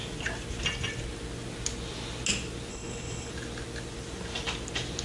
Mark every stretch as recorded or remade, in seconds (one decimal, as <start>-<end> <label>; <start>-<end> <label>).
0.0-2.7 recorded; 2.7-3.3 remade; 3.3-5.0 recorded